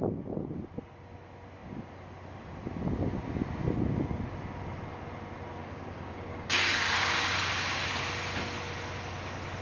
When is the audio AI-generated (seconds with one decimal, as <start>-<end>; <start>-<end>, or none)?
5.6-8.0